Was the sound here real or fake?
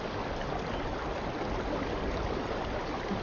real